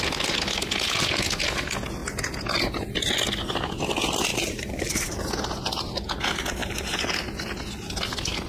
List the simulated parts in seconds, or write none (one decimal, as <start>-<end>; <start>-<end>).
4.3-5.2; 6.6-7.2